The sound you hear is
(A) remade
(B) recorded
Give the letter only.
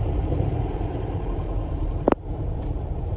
A